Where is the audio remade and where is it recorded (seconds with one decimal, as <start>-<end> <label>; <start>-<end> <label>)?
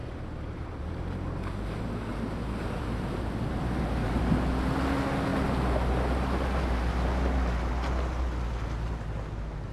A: 0.0-0.8 remade; 0.8-2.1 recorded; 2.1-4.1 remade; 4.1-9.7 recorded